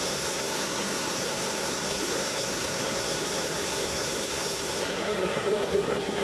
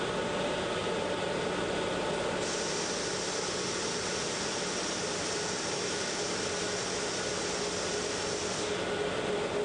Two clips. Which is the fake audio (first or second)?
first